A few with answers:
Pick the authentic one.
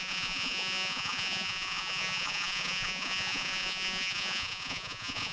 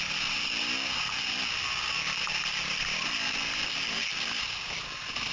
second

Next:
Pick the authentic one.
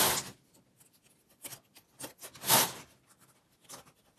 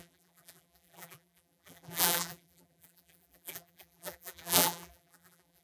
first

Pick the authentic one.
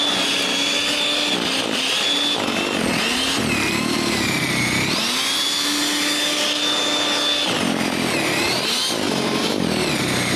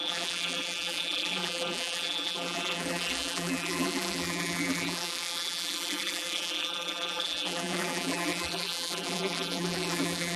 first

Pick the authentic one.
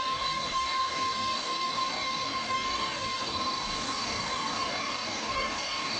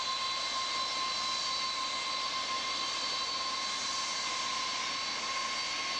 second